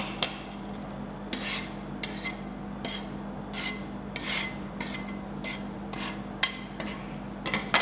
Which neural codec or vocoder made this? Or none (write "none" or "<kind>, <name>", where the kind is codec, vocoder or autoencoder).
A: none